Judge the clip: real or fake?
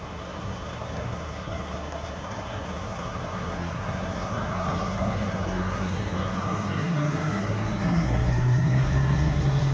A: fake